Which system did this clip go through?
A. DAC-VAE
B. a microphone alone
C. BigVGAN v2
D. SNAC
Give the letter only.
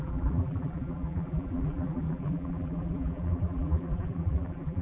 C